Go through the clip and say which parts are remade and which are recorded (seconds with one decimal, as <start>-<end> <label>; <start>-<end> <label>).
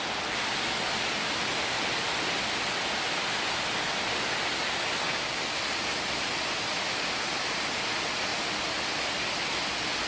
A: 0.0-5.1 recorded; 5.1-5.6 remade; 5.6-10.1 recorded